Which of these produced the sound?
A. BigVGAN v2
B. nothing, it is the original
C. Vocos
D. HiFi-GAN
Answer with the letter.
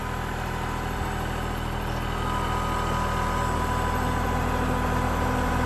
B